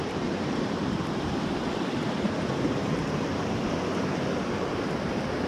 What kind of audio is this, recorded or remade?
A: remade